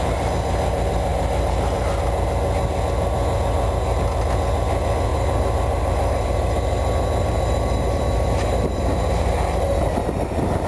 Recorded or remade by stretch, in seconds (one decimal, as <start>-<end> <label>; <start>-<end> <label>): 0.0-1.1 recorded; 1.1-1.9 remade; 1.9-5.1 recorded; 5.1-10.7 remade